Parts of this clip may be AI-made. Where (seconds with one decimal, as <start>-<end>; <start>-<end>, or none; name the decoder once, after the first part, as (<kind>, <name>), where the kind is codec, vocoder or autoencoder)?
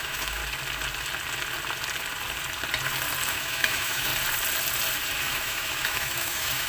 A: 0.0-0.4 (autoencoder, DAC-VAE); 3.3-4.1; 5.2-6.7